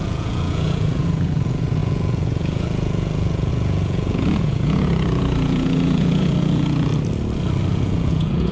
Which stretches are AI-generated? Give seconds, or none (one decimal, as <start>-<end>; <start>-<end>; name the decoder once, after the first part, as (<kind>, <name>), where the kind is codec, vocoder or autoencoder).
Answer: 0.0-6.9 (vocoder, Vocos); 7.7-8.5